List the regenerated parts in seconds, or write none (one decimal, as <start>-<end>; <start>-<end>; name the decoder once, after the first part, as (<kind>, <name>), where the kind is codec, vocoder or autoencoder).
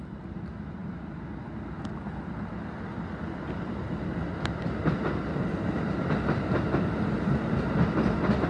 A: none